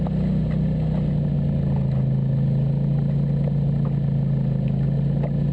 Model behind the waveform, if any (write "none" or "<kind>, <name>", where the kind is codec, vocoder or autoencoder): none